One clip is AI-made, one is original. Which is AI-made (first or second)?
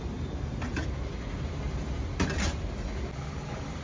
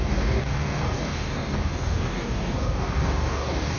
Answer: second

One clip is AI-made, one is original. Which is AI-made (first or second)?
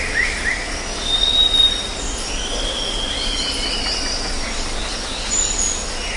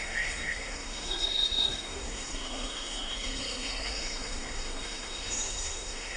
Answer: second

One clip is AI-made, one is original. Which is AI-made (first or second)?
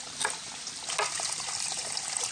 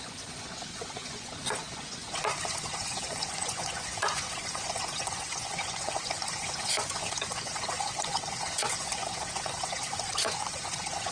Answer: second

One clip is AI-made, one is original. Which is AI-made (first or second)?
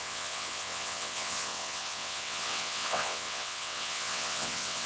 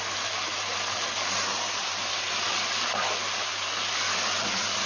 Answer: first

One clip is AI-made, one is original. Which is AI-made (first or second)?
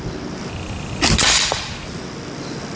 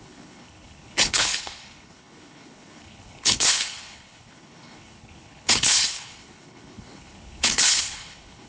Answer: second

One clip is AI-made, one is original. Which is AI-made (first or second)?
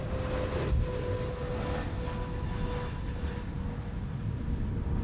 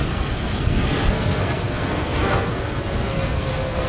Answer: second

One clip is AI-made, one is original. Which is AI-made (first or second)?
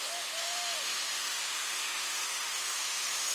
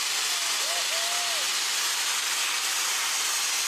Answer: first